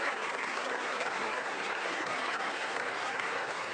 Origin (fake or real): fake